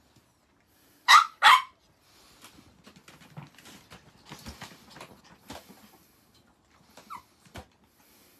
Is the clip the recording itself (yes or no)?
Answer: yes